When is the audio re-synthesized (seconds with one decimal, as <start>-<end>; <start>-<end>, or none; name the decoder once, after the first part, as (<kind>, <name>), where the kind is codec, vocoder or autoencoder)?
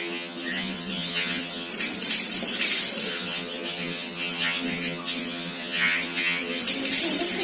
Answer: 0.0-1.7 (vocoder, HiFi-GAN); 3.1-6.6